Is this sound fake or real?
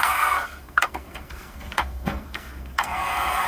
fake